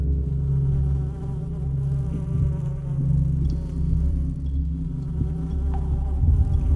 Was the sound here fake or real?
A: real